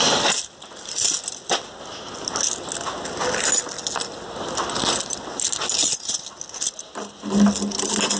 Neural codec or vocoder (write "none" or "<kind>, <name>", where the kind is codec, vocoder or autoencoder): none